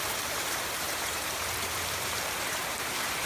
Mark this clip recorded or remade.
remade